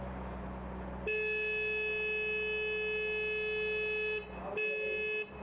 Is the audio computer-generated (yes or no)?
no